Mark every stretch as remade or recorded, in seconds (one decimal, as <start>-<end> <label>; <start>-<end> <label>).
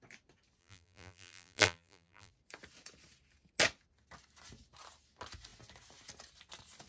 0.0-0.6 recorded; 0.6-2.3 remade; 2.3-6.9 recorded